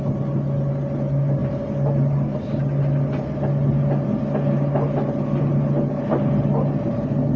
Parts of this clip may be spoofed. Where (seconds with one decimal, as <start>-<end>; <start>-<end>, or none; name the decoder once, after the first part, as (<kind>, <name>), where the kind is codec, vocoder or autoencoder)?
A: none